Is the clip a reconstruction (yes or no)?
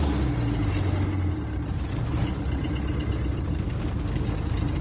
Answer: no